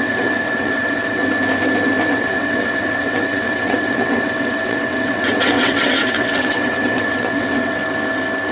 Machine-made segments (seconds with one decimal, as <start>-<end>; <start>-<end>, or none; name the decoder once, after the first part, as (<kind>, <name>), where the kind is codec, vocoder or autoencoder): 0.0-1.2 (vocoder, WaveNeXt); 2.1-7.8